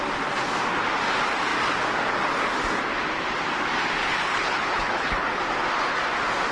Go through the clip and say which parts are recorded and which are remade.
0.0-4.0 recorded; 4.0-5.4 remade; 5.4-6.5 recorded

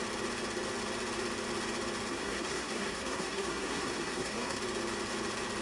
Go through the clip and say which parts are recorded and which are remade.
0.0-2.1 recorded; 2.1-4.6 remade; 4.6-5.6 recorded